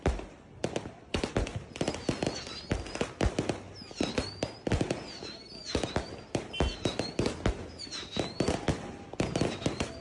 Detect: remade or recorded recorded